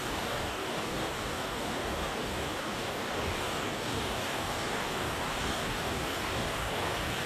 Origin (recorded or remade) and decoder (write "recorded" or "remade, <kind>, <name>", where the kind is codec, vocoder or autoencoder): remade, codec, DAC